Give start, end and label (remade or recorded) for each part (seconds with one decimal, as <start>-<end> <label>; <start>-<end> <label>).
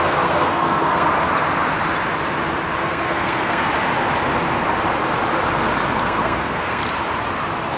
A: 0.0-1.1 remade; 1.1-2.8 recorded; 2.8-3.7 remade; 3.7-6.0 recorded; 6.0-6.8 remade; 6.8-7.8 recorded